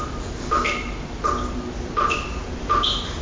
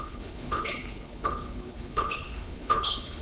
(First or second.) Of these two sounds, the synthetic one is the second